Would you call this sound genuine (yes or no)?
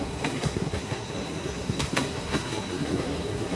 no